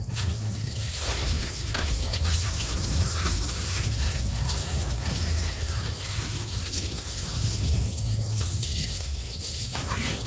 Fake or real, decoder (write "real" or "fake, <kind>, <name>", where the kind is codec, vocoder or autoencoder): fake, codec, SNAC